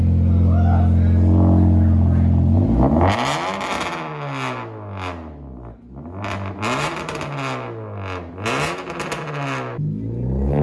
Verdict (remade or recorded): recorded